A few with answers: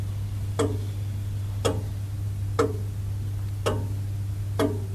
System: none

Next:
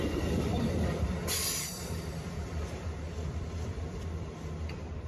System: vocoder, BigVGAN v2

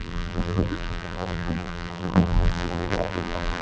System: vocoder, BigVGAN v2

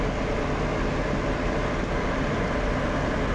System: none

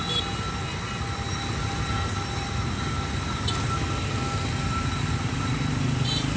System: none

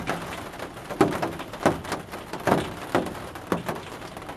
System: none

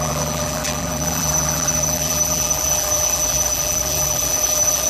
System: vocoder, BigVGAN v2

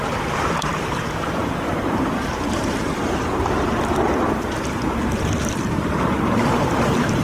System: vocoder, BigVGAN v2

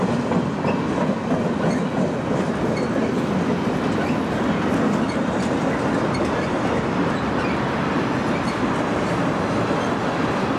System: none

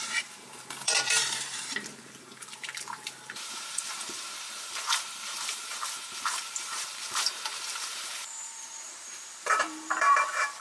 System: vocoder, BigVGAN v2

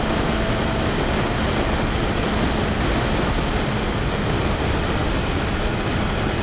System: none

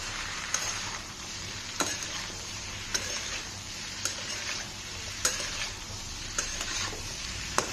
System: vocoder, BigVGAN v2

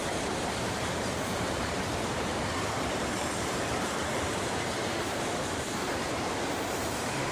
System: vocoder, BigVGAN v2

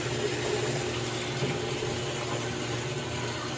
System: none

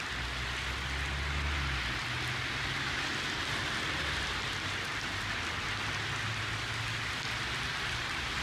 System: none